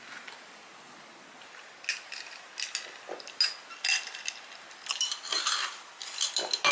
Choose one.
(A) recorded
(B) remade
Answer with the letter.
A